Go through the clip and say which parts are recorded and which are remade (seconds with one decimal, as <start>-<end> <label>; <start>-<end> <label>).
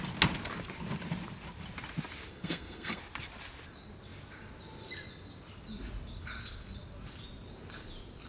0.0-2.3 recorded; 2.3-3.0 remade; 3.0-8.3 recorded